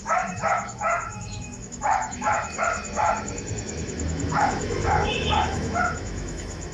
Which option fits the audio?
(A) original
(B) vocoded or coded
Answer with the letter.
B